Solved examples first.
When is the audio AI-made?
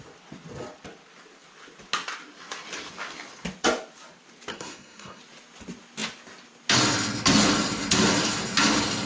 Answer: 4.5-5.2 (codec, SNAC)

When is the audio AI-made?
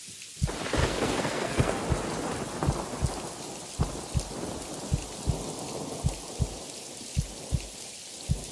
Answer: 0.8-1.8 (codec, SNAC)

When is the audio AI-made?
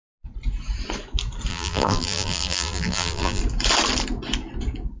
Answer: 1.5-3.4 (vocoder, BigVGAN v2)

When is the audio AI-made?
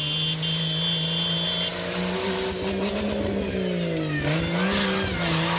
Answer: none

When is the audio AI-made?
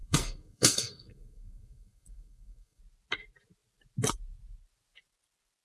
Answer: 0.0-2.8 (codec, SNAC)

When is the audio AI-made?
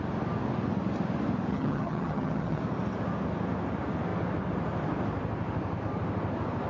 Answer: 1.5-2.6 (vocoder, HiFi-GAN)